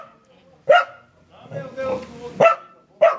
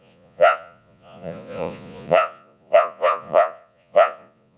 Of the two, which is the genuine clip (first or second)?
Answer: first